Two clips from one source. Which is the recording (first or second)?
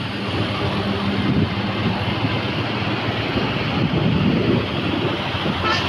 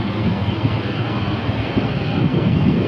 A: first